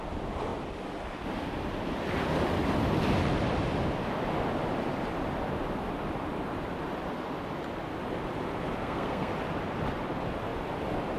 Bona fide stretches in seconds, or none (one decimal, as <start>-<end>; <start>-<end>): 0.0-8.8; 9.3-11.2